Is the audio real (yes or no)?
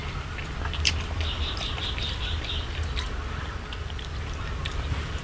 no